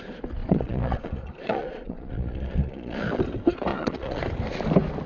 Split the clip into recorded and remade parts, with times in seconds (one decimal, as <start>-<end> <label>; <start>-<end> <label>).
0.0-0.4 recorded; 0.4-3.2 remade; 3.2-3.7 recorded; 3.7-4.2 remade; 4.2-5.1 recorded